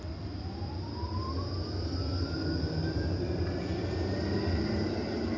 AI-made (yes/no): no